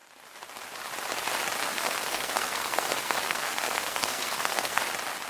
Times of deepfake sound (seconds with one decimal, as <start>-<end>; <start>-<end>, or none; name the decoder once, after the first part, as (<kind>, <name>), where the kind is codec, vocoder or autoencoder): 1.6-4.8 (codec, SNAC)